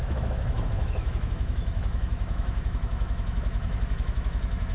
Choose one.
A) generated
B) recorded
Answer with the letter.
A